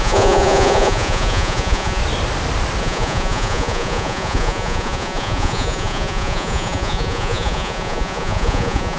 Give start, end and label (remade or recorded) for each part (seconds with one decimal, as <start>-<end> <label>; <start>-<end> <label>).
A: 0.0-2.0 remade; 2.0-2.8 recorded; 2.8-9.0 remade